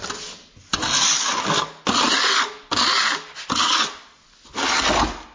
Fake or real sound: real